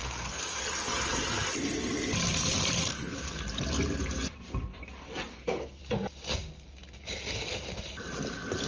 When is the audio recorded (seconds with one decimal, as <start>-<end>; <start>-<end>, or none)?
0.6-2.9; 3.4-5.3; 5.8-8.7